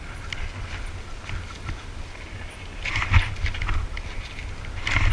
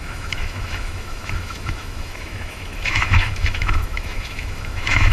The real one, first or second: first